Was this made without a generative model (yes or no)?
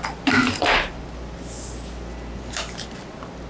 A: yes